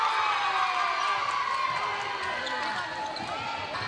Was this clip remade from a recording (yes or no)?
no